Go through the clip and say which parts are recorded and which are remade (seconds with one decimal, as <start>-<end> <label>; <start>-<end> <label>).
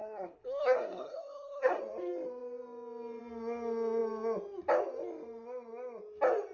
0.0-1.8 remade; 1.8-6.5 recorded